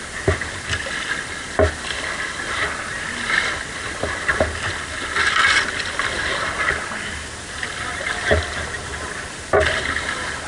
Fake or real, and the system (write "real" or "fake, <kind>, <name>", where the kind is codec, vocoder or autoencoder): real